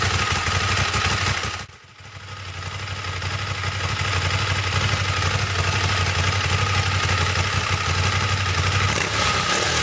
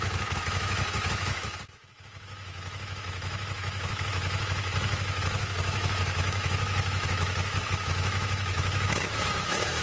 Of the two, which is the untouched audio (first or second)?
first